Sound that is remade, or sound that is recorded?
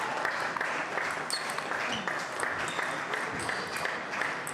recorded